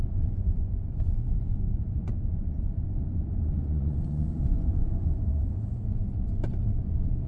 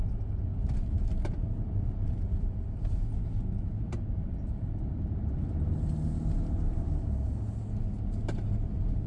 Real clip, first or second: second